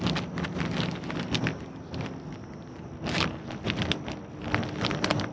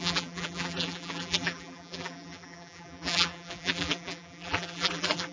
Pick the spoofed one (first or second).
second